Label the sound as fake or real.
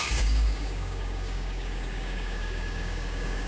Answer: fake